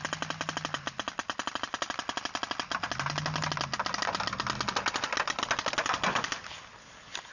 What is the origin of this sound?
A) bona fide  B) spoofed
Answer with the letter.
A